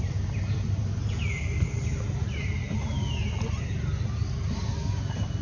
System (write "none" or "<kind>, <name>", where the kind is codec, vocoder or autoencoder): none